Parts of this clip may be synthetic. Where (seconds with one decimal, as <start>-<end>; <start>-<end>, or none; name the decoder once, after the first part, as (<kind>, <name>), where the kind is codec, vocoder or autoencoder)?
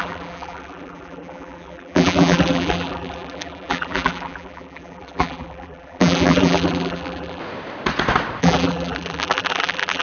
0.0-7.4 (vocoder, BigVGAN v2); 8.4-10.0